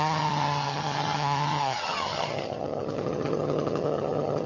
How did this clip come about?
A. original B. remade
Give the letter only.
B